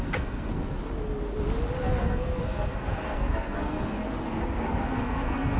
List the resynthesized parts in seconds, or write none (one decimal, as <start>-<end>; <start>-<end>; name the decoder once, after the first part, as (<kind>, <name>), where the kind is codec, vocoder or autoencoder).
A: 0.0-0.8 (codec, SNAC); 2.0-4.0; 4.6-5.6